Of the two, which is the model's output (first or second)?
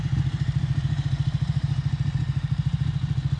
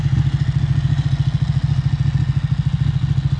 first